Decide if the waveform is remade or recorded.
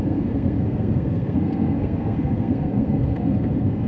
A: remade